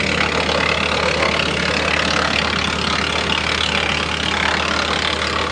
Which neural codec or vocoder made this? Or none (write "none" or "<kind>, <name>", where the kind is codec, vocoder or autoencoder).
none